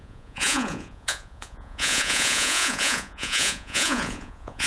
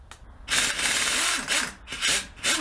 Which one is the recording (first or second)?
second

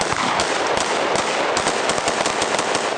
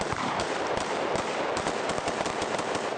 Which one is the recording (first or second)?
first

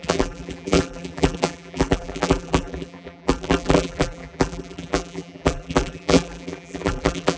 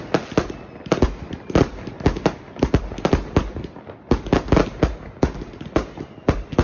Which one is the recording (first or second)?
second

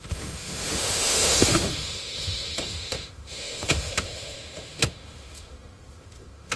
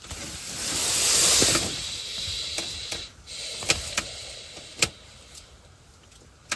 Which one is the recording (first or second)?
second